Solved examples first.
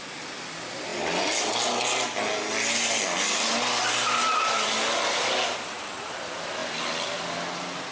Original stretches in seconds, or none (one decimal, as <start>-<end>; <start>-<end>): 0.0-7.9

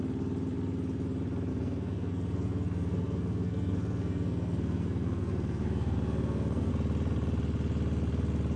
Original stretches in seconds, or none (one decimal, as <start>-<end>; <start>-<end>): 0.0-1.5; 6.7-8.6

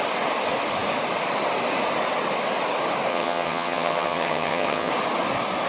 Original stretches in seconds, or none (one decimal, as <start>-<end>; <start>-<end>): 0.0-3.1; 4.9-5.7